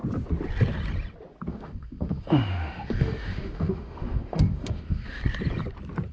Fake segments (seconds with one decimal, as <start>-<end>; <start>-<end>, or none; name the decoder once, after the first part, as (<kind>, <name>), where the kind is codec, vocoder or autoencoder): 1.5-5.2 (autoencoder, DAC-VAE)